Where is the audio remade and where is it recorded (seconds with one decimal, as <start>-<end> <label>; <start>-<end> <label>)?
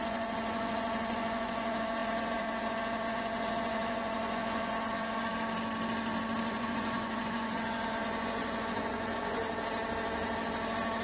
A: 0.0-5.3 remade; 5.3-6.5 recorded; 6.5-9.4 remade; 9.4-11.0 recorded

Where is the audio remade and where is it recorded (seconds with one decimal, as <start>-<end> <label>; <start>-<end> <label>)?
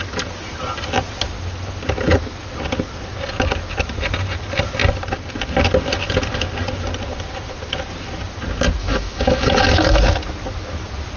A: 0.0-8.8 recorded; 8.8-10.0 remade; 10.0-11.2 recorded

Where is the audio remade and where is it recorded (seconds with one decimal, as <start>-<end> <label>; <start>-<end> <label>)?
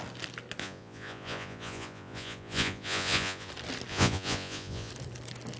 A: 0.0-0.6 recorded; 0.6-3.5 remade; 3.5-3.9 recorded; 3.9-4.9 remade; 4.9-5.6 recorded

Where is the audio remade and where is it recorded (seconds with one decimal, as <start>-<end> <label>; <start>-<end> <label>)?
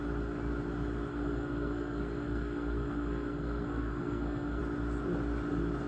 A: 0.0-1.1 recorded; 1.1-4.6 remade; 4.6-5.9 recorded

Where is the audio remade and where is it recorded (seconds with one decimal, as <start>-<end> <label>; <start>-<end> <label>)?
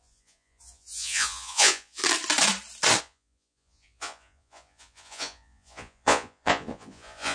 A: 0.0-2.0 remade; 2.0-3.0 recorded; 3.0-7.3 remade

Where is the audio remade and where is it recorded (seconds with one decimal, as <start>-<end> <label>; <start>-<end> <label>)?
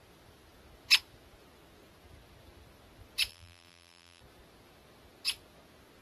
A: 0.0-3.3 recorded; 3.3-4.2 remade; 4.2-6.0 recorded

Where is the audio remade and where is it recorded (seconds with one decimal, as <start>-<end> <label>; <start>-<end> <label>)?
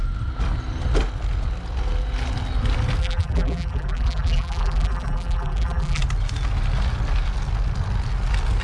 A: 0.0-3.0 recorded; 3.0-6.0 remade; 6.0-8.6 recorded